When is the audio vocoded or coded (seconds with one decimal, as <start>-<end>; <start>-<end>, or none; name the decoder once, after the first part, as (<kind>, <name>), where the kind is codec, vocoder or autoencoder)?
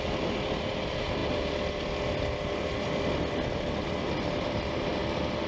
none